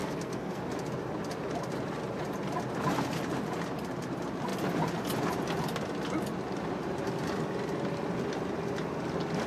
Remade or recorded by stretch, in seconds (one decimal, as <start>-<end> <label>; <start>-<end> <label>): 0.0-0.6 remade; 0.6-9.5 recorded